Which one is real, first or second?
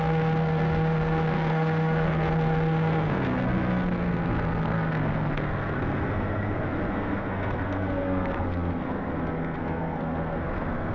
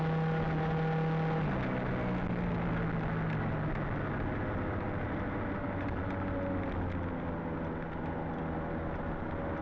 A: second